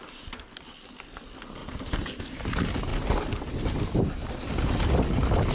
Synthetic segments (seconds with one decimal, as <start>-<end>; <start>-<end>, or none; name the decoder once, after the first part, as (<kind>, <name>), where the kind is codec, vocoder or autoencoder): 0.0-0.5 (vocoder, BigVGAN v2); 1.6-2.2; 2.9-4.5

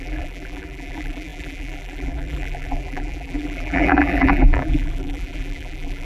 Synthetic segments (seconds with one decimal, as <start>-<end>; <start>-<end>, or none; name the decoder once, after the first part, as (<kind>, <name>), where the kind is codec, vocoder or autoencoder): 0.0-6.0 (vocoder, BigVGAN v2)

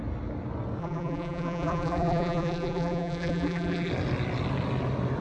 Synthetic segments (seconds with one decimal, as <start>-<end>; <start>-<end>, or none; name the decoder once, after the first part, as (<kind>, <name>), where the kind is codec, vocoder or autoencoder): 0.8-3.9 (vocoder, BigVGAN v2)

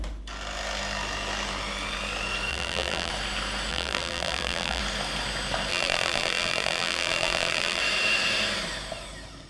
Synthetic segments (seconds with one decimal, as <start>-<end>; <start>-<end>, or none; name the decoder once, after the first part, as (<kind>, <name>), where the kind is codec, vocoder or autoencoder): 2.5-3.1 (vocoder, BigVGAN v2); 3.7-4.8; 5.7-7.8